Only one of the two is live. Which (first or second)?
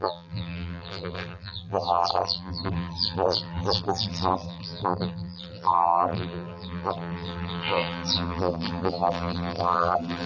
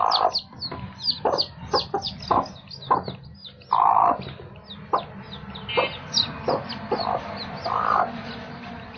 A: second